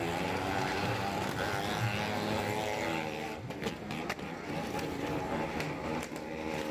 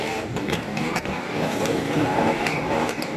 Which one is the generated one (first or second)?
second